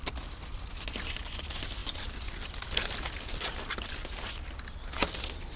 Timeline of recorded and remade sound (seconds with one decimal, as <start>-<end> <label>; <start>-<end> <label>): 0.0-5.6 recorded